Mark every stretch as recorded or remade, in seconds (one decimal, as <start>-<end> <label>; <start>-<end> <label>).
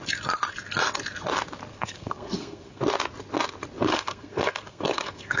0.0-1.7 recorded; 1.7-2.8 remade; 2.8-3.9 recorded; 3.9-5.4 remade